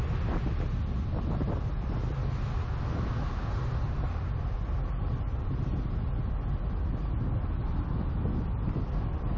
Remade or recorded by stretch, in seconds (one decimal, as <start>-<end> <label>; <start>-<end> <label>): 0.0-9.4 recorded